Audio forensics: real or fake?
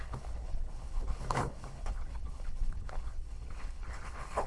fake